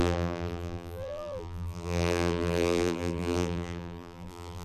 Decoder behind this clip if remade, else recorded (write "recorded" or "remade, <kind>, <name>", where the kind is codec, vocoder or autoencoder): remade, vocoder, BigVGAN v2